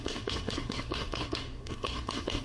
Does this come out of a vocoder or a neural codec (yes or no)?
yes